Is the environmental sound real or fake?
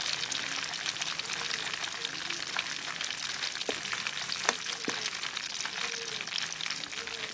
real